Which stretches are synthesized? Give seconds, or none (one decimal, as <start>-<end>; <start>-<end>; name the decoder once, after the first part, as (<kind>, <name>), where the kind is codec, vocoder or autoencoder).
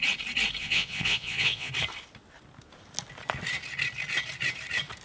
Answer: 0.6-1.7 (vocoder, Vocos)